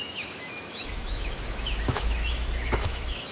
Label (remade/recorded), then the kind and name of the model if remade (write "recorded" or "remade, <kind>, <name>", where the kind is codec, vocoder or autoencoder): remade, autoencoder, DAC-VAE